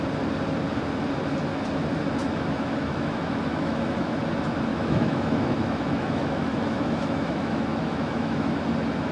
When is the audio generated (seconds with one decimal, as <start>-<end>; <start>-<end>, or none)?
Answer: 2.2-4.2; 4.7-8.6